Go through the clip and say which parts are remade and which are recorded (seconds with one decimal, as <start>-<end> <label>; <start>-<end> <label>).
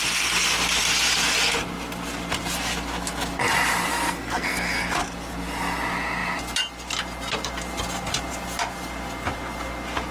0.0-3.9 recorded; 3.9-4.8 remade; 4.8-10.1 recorded